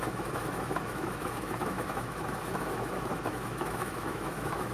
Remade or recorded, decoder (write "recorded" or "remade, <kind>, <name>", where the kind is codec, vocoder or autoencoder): remade, autoencoder, DAC-VAE